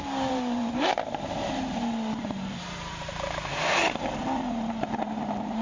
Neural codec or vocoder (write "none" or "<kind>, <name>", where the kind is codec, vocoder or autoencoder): vocoder, BigVGAN v2